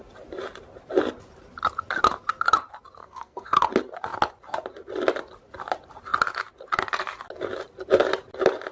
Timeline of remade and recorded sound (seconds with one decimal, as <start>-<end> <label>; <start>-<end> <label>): 0.0-3.0 recorded; 3.0-3.6 remade; 3.6-8.7 recorded